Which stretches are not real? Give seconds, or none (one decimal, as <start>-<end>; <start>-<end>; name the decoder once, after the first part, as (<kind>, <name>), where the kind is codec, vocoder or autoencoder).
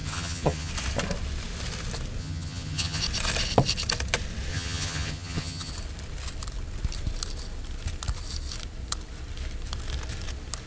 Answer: 0.0-0.7 (vocoder, HiFi-GAN); 2.2-3.0; 4.5-5.7